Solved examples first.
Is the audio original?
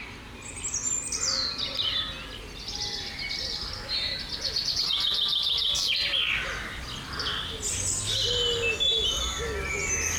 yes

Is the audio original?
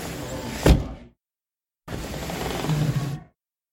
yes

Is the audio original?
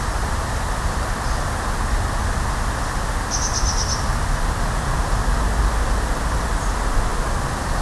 yes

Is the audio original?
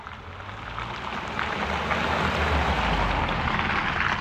yes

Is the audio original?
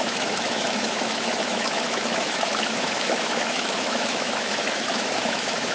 no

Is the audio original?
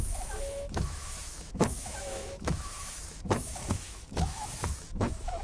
no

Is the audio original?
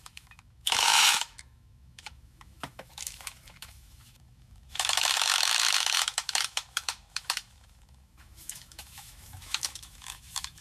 no